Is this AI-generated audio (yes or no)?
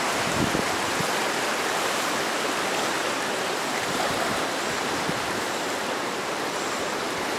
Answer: no